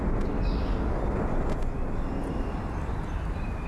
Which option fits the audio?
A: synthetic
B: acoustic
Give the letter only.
B